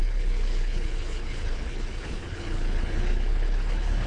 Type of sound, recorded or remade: remade